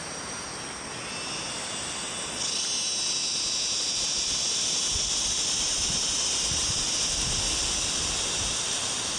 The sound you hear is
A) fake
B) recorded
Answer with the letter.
B